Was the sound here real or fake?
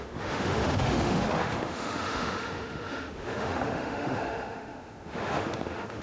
fake